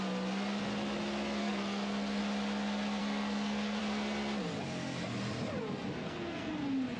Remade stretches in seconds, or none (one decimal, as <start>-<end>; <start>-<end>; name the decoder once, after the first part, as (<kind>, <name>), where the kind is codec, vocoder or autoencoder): 1.4-2.2 (codec, SNAC); 3.0-3.8; 6.0-6.6